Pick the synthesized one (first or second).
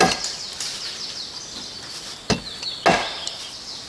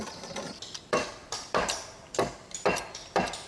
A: second